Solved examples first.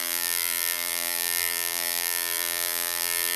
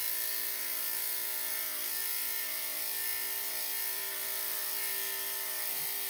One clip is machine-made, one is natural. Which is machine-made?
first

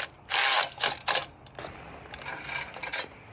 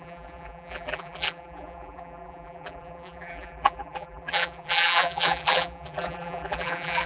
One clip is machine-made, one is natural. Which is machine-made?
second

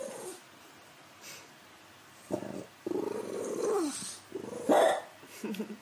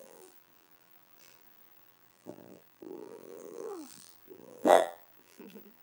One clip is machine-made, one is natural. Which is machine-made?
second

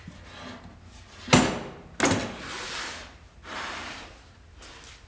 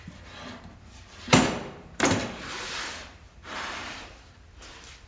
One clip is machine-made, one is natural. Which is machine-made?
second